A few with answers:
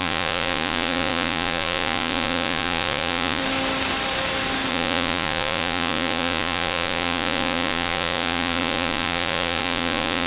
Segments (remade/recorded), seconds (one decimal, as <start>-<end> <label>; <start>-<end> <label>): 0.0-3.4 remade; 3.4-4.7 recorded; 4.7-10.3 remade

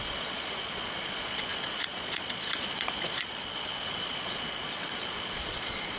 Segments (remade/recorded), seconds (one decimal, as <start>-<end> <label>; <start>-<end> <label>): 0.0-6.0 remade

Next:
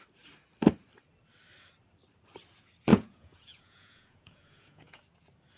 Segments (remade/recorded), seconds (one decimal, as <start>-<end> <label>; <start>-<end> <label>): 0.0-2.9 recorded; 2.9-5.0 remade; 5.0-5.6 recorded

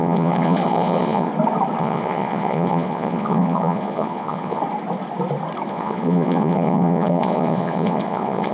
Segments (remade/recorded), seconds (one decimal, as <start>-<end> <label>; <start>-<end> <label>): 0.0-1.3 remade; 1.3-1.8 recorded; 1.8-4.6 remade; 4.6-5.7 recorded; 5.7-8.5 remade

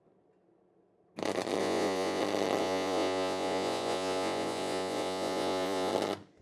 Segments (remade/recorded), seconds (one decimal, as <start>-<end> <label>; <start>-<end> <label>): 0.0-1.6 recorded; 1.6-2.2 remade; 2.2-2.6 recorded; 2.6-5.9 remade; 5.9-6.4 recorded

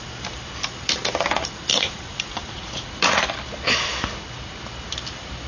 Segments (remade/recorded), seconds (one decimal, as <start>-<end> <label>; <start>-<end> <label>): 0.0-1.7 recorded; 1.7-3.2 remade; 3.2-5.5 recorded

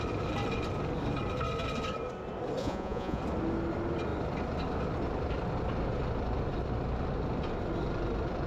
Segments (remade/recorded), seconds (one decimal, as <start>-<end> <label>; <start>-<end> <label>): 0.0-2.6 recorded; 2.6-3.2 remade; 3.2-8.5 recorded

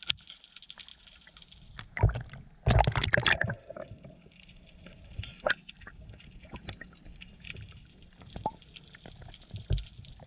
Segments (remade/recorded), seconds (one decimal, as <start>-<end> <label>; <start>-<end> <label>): 0.0-10.3 recorded